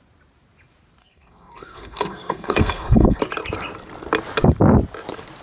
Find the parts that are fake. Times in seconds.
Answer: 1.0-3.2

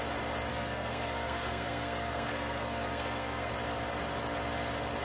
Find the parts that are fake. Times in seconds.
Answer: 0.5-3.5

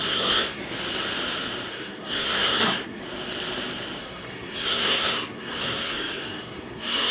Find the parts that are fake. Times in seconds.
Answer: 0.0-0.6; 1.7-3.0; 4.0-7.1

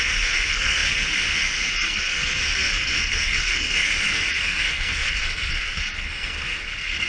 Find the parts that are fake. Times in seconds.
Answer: 0.0-7.1